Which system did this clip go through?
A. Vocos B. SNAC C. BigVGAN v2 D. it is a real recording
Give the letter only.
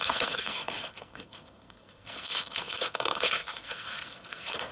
B